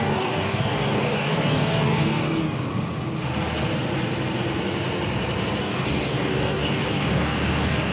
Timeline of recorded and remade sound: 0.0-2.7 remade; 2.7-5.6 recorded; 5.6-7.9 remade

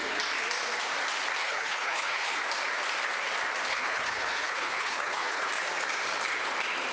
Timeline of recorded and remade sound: 0.0-1.4 recorded; 1.4-2.4 remade; 2.4-3.7 recorded; 3.7-5.5 remade; 5.5-6.9 recorded

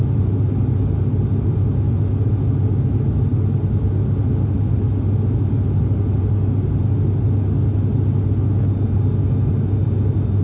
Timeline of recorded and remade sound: 0.0-10.4 recorded

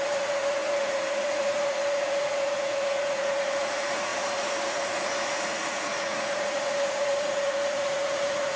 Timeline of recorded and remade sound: 0.0-8.6 remade

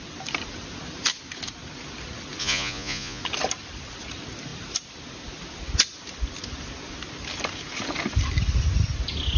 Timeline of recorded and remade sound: 0.0-2.4 recorded; 2.4-3.2 remade; 3.2-9.4 recorded

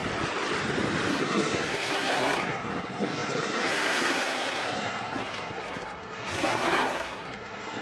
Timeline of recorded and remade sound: 0.0-1.1 recorded; 1.1-7.8 remade